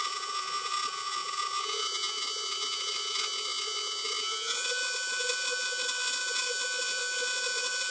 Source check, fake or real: fake